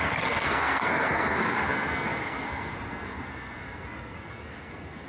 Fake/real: fake